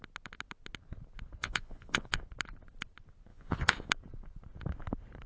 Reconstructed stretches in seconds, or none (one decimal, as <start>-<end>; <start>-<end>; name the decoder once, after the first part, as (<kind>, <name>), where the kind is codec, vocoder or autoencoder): 1.4-2.2 (vocoder, Vocos); 3.3-3.9